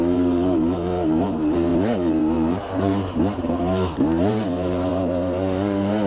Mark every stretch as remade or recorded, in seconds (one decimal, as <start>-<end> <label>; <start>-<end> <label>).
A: 0.0-6.1 remade